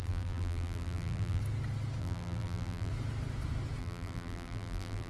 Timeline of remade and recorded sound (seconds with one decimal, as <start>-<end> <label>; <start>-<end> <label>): 0.0-1.4 remade; 1.4-2.0 recorded; 2.0-2.9 remade; 2.9-3.8 recorded; 3.8-5.1 remade